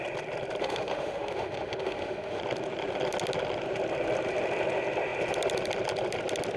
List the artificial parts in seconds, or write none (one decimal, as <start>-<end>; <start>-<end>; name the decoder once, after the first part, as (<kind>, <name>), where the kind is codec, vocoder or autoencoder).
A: 0.6-2.4 (autoencoder, DAC-VAE)